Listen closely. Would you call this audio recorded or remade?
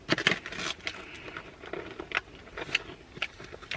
recorded